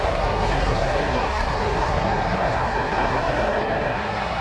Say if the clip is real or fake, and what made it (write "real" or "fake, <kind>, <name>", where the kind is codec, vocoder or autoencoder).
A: fake, codec, SNAC